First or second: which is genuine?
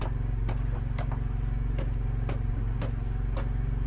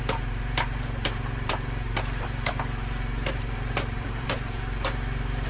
first